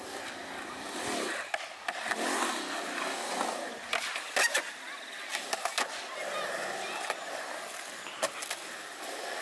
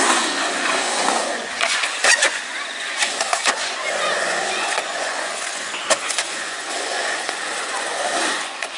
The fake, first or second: second